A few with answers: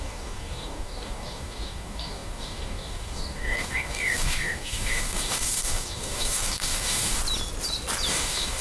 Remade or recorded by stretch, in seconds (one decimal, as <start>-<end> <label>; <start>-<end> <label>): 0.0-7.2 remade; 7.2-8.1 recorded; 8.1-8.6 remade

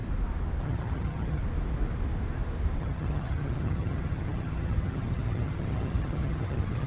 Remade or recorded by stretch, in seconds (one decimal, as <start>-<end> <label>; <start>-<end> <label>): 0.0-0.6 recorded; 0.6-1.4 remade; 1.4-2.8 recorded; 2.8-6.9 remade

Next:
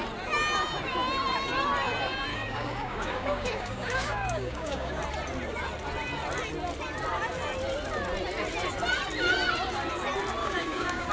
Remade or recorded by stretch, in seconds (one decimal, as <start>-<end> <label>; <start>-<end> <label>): 0.0-2.3 recorded; 2.3-5.0 remade; 5.0-10.4 recorded; 10.4-11.1 remade

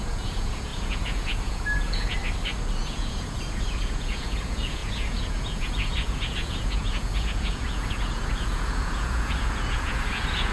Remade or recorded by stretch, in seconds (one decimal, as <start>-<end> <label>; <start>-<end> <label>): 0.0-2.2 remade; 2.2-2.8 recorded; 2.8-10.5 remade